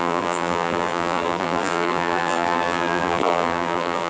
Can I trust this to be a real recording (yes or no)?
no